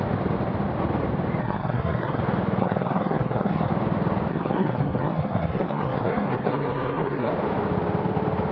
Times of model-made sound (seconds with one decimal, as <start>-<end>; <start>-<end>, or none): 1.4-2.2; 2.6-3.7; 4.3-7.3